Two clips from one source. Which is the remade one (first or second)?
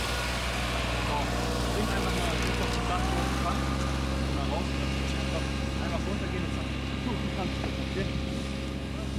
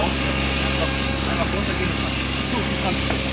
second